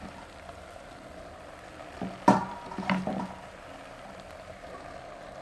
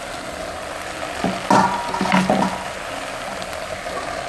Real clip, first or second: second